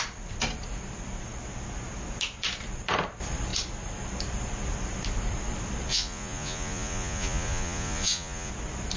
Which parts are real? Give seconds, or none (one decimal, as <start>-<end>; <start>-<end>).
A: 0.0-5.9; 8.5-9.0